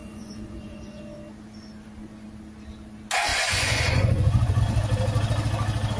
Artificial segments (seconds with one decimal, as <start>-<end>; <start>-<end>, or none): 0.0-1.0; 3.3-4.6